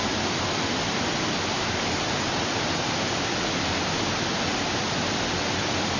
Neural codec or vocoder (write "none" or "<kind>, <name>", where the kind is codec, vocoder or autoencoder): none